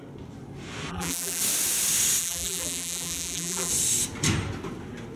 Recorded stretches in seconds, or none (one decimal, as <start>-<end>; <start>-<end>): 0.0-0.9; 1.4-2.2; 3.7-5.2